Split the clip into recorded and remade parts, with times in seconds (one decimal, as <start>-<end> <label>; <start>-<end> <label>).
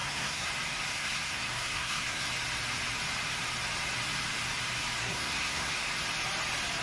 0.0-0.5 remade; 0.5-0.9 recorded; 0.9-2.3 remade; 2.3-5.0 recorded; 5.0-5.7 remade; 5.7-6.8 recorded